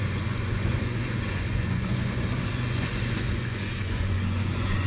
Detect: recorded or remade remade